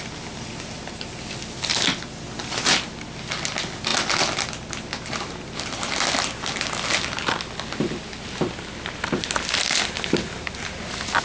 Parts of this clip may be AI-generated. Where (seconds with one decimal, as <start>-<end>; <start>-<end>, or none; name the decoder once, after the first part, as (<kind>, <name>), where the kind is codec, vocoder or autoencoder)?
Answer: none